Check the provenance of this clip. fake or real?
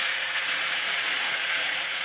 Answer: fake